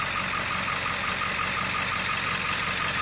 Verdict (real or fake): real